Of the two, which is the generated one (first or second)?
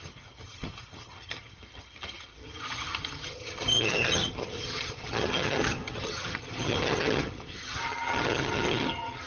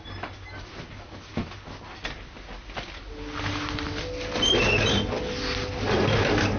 first